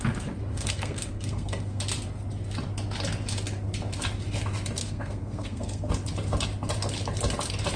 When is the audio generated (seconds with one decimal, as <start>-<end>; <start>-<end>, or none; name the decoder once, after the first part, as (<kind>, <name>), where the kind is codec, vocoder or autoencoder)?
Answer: 0.5-1.8 (codec, SNAC); 4.8-5.9